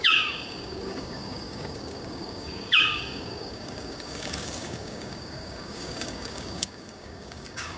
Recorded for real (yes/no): no